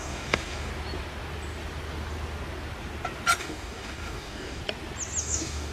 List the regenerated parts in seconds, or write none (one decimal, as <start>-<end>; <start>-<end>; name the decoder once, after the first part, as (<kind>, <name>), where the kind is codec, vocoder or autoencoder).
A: 0.0-0.7 (codec, DAC); 3.4-4.6; 5.2-5.7

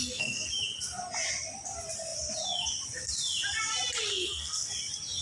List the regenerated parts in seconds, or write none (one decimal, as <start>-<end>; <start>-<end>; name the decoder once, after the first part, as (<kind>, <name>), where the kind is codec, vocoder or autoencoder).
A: 0.0-0.5 (codec, SNAC); 4.1-4.7

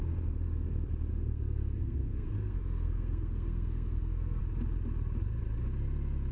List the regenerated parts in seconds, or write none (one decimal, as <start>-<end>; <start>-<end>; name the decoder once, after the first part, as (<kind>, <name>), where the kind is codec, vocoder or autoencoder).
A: 1.1-4.4 (codec, SNAC)

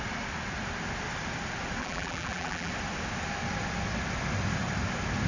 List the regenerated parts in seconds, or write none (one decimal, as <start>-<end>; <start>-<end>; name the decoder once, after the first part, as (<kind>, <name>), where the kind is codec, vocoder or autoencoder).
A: 1.8-2.7 (vocoder, BigVGAN v2)

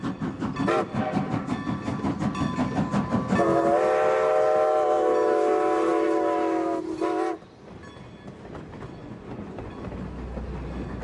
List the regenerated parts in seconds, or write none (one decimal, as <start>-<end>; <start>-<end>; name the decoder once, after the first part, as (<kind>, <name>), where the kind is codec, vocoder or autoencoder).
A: 9.0-9.8 (vocoder, Vocos)

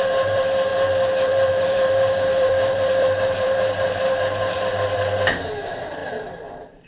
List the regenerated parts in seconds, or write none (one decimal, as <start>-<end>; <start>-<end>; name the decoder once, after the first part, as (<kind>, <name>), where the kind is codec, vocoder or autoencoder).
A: 0.0-6.9 (vocoder, BigVGAN v2)

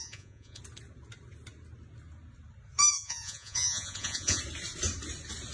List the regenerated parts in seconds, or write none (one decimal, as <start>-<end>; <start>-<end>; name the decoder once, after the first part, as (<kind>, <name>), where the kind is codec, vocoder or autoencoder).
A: 0.0-0.6 (vocoder, Vocos); 2.9-4.4

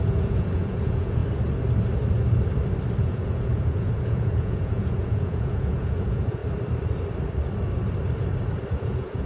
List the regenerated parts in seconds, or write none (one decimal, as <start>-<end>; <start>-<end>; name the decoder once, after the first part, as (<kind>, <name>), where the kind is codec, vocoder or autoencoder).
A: 0.0-1.2 (vocoder, Vocos); 3.0-6.4; 8.7-9.2